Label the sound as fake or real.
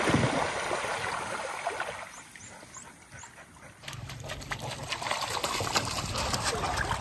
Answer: real